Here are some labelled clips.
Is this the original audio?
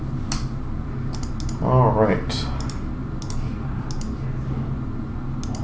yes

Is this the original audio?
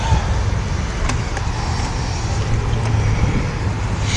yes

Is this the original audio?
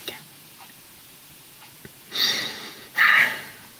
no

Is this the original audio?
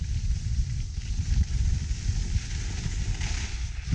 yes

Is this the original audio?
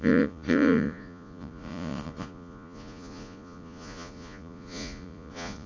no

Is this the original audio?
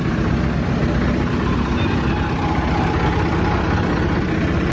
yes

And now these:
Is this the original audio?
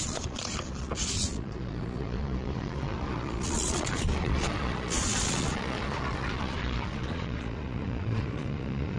no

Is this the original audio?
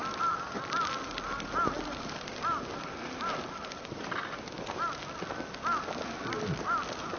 yes